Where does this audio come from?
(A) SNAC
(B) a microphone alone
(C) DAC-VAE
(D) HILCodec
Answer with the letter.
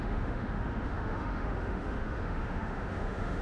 C